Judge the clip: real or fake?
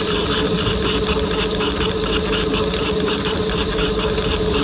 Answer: real